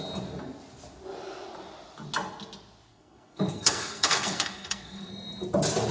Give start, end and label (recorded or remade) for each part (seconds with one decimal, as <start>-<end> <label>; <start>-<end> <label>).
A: 0.0-2.9 recorded; 2.9-5.1 remade; 5.1-5.9 recorded